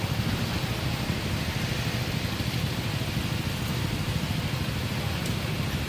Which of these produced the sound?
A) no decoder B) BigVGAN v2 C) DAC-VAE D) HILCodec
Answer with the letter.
A